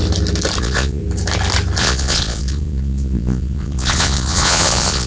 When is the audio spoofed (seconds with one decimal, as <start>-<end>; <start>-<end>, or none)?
0.6-1.0; 1.8-5.1